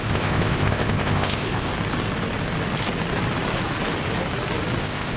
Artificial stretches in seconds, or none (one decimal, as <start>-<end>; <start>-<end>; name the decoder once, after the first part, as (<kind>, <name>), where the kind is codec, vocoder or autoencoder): 0.0-1.7 (codec, ZipCodec); 4.8-5.2